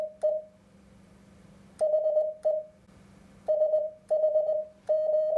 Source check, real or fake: fake